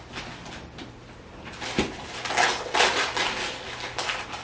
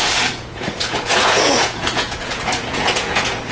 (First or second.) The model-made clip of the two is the second